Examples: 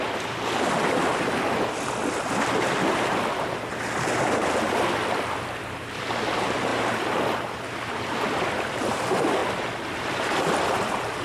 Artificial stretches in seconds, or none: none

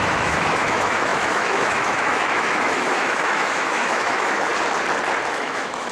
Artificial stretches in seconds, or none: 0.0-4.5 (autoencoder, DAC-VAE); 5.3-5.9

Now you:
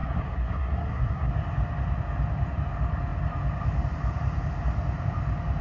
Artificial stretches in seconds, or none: 0.0-1.3 (codec, SNAC)

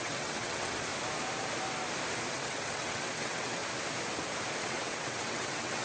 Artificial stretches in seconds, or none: 0.0-0.9 (vocoder, WaveNeXt); 2.3-3.6; 4.6-5.8

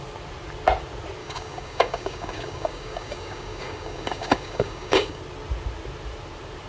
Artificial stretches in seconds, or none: 1.2-5.2 (codec, DAC)

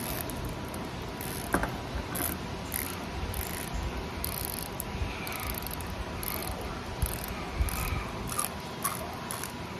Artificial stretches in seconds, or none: none

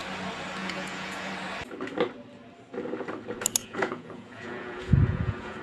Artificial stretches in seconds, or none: 0.6-1.3 (vocoder, Vocos); 3.6-5.6

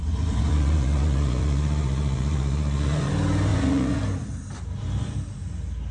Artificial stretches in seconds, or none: 0.5-3.1 (vocoder, Vocos); 3.5-4.0